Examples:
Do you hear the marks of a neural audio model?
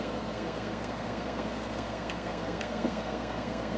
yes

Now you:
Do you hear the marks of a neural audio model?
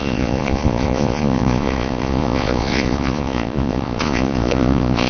yes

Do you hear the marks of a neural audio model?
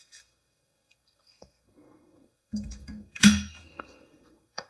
yes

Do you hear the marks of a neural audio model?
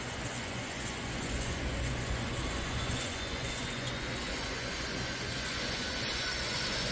yes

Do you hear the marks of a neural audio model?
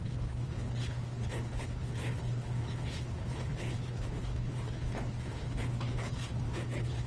yes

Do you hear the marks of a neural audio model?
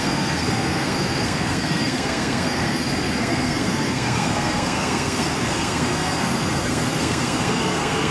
yes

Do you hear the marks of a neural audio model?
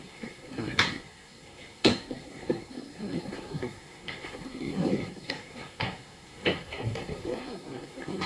yes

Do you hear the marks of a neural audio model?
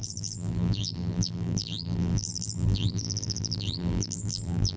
yes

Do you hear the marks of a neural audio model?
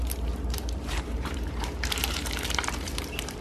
yes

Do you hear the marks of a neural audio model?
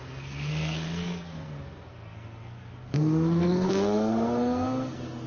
yes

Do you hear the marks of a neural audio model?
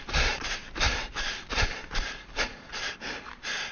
yes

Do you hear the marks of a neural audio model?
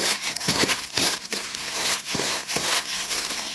yes